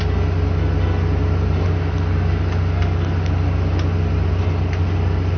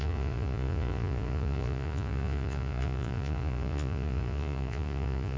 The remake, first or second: second